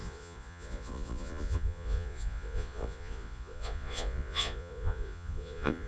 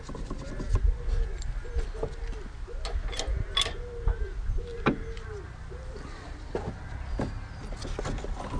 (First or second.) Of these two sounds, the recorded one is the second